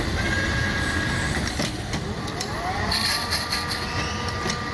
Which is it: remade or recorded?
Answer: recorded